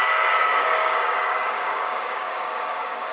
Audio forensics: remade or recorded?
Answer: remade